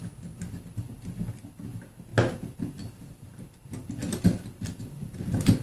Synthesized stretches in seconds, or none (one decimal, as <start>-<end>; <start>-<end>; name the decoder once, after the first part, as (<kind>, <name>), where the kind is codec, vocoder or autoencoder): none